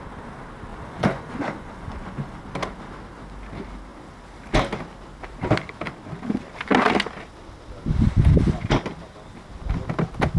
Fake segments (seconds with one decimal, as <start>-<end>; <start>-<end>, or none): 0.7-2.4